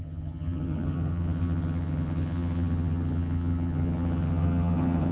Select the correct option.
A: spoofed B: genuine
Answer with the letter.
A